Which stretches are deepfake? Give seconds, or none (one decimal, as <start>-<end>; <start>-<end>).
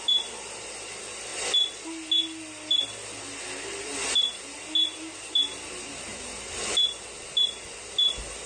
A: none